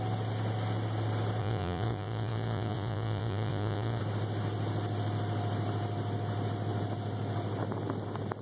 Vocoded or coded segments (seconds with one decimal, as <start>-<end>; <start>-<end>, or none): 1.4-4.0